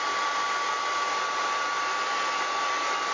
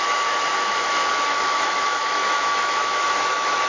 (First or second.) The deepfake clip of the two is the second